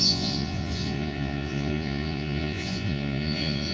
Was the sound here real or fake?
fake